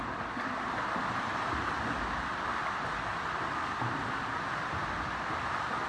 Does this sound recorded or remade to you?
recorded